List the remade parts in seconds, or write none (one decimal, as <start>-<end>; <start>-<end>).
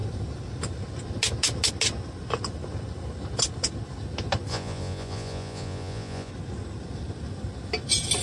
4.5-6.3